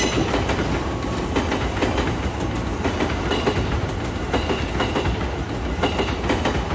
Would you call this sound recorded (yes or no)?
yes